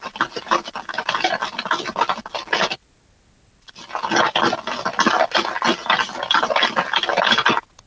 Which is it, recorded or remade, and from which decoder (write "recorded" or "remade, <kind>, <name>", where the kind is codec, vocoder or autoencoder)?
recorded